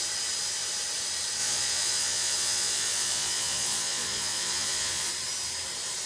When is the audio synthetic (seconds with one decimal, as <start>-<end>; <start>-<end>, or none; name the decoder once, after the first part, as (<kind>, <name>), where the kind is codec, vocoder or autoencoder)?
1.4-5.1 (vocoder, Vocos)